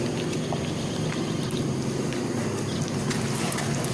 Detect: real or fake real